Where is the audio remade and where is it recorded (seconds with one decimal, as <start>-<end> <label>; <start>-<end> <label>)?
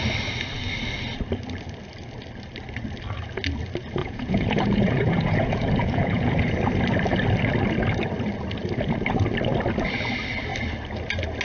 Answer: 0.0-4.0 recorded; 4.0-6.5 remade; 6.5-11.4 recorded